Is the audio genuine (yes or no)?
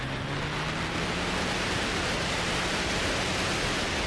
yes